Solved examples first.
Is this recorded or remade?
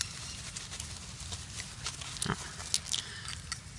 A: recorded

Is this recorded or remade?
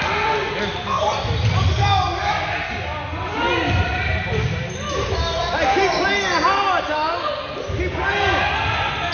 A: recorded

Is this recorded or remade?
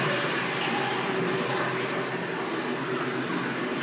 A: recorded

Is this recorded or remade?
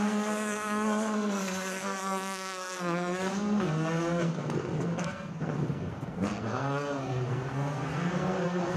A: remade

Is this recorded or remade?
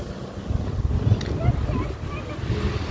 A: recorded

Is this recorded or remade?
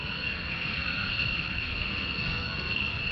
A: remade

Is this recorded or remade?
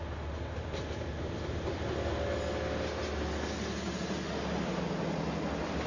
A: recorded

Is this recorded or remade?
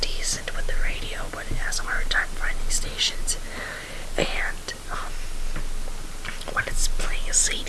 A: recorded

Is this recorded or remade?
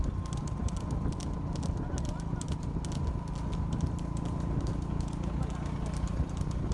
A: recorded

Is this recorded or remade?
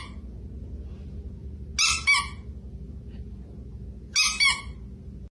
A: recorded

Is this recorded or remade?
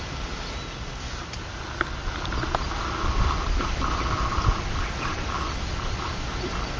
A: recorded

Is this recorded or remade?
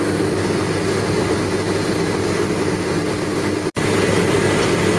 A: recorded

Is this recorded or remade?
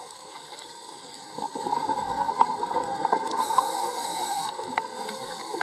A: remade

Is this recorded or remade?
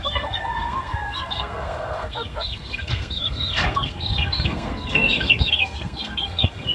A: remade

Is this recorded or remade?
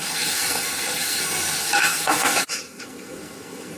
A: remade